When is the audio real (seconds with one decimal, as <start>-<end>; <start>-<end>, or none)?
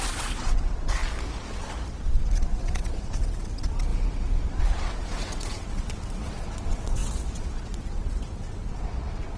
1.0-2.2